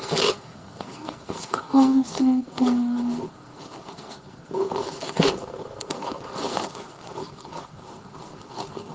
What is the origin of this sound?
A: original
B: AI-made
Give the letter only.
B